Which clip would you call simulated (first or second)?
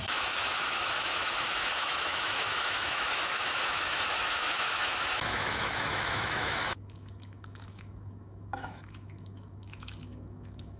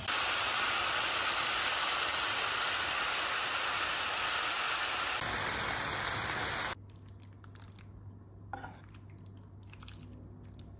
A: first